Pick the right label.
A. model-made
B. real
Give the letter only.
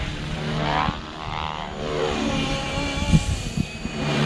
A